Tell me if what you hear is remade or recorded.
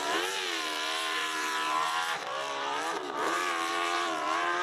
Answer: remade